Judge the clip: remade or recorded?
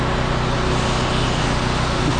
recorded